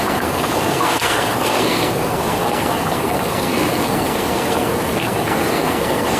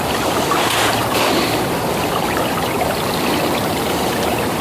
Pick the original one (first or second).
second